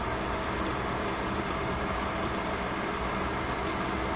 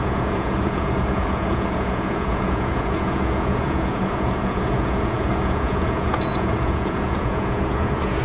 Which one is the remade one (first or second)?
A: second